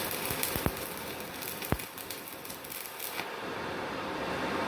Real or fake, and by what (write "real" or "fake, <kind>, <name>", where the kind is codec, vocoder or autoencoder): real